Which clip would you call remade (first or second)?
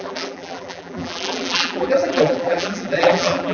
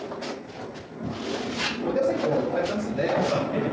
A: first